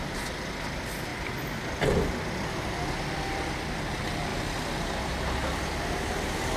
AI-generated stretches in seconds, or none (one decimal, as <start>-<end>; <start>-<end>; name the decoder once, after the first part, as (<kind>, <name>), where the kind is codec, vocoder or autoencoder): none